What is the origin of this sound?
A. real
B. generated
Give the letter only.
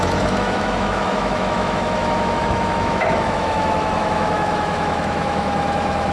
B